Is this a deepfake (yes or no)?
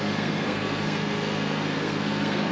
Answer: yes